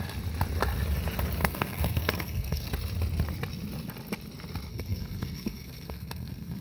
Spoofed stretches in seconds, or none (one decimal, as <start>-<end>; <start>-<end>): 1.4-2.7; 4.7-6.6